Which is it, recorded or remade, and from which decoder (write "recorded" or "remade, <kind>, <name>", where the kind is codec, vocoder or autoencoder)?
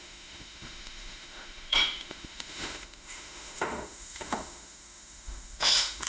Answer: remade, autoencoder, DAC-VAE